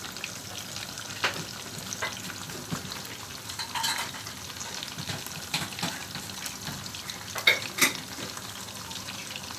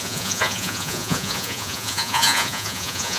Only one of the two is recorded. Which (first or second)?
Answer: first